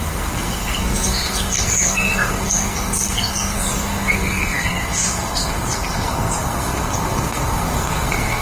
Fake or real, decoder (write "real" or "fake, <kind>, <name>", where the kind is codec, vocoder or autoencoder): fake, codec, SNAC